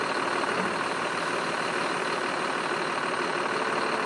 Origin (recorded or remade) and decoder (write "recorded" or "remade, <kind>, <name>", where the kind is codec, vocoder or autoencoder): recorded